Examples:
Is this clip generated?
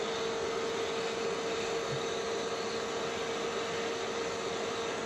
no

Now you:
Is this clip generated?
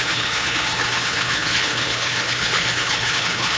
yes